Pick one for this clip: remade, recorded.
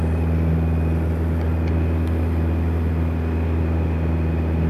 recorded